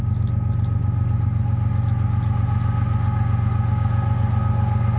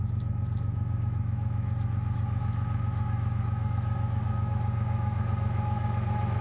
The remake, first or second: second